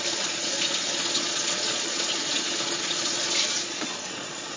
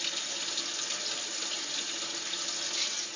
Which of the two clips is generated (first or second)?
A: first